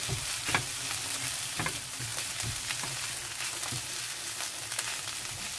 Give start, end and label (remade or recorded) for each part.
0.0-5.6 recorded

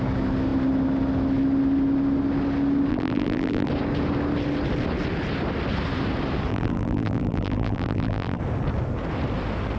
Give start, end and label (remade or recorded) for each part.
0.0-2.9 recorded; 2.9-3.7 remade; 3.7-6.5 recorded; 6.5-8.4 remade; 8.4-9.8 recorded

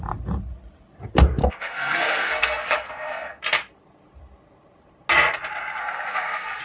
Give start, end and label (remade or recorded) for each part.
0.0-1.4 recorded; 1.4-3.4 remade; 3.4-5.8 recorded; 5.8-6.6 remade

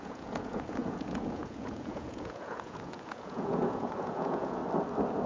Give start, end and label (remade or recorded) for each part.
0.0-4.6 remade; 4.6-5.3 recorded

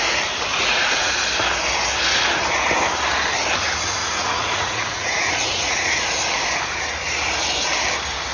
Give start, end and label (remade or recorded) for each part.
0.0-0.5 recorded; 0.5-1.1 remade; 1.1-4.0 recorded; 4.0-6.1 remade; 6.1-8.3 recorded

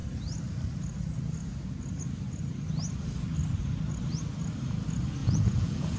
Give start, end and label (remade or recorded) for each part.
0.0-5.2 recorded; 5.2-6.0 remade

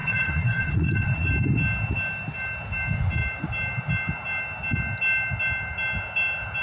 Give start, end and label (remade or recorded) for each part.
0.0-1.3 remade; 1.3-6.6 recorded

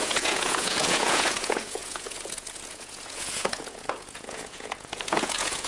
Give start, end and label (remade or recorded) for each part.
0.0-5.7 remade